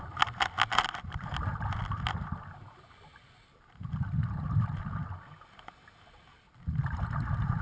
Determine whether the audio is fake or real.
real